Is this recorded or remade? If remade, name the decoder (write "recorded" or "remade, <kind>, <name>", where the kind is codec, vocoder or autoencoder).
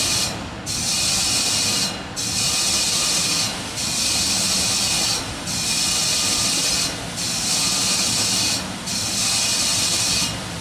recorded